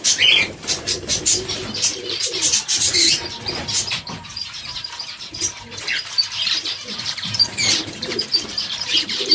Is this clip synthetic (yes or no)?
yes